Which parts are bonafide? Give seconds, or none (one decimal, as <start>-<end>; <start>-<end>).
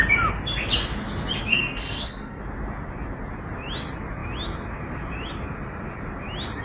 0.0-1.5; 2.4-6.6